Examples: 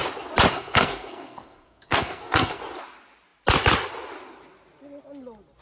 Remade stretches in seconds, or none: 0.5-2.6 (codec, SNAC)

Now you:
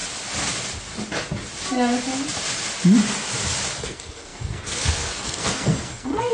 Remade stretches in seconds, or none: 3.8-6.3 (codec, SNAC)

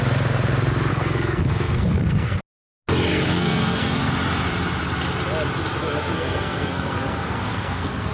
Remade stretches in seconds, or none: 0.9-2.4 (codec, SNAC); 3.1-4.1; 5.8-8.1